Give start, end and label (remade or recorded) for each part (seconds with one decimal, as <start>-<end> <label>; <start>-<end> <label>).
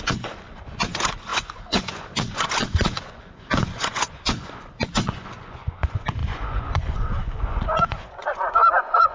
0.0-9.1 remade